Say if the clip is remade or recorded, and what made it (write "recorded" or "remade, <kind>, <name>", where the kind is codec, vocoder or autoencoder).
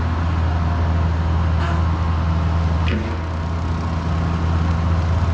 recorded